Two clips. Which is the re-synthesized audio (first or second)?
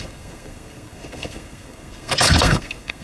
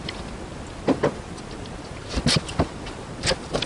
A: first